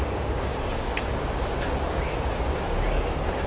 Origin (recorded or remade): remade